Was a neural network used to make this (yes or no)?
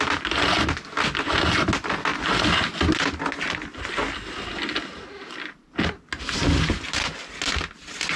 no